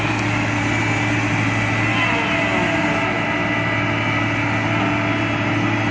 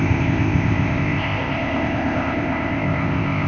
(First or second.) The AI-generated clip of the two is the second